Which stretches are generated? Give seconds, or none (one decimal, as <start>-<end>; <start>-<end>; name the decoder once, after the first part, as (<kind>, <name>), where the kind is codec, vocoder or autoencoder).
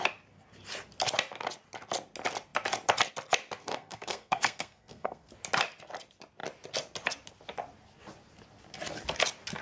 3.6-5.3 (codec, SNAC)